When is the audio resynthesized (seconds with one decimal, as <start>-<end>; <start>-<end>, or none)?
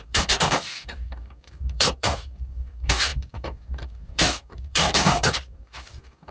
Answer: 0.0-6.3